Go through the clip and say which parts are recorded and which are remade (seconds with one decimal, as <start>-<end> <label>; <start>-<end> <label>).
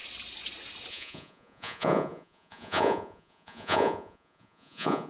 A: 0.0-0.9 recorded; 0.9-5.1 remade